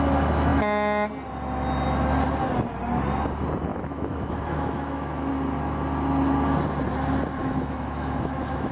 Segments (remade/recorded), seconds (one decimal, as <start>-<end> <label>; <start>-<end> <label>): 0.0-3.7 recorded; 3.7-5.3 remade; 5.3-7.4 recorded; 7.4-8.7 remade